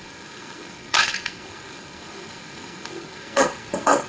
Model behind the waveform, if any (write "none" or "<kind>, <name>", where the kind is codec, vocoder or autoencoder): codec, SNAC